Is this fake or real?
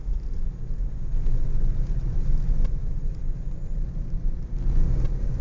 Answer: real